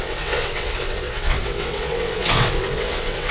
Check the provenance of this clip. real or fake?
fake